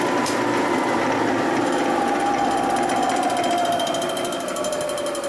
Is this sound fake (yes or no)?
no